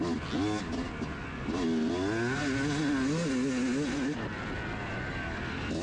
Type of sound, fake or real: real